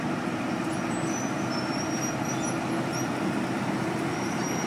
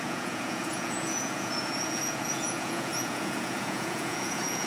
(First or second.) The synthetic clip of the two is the second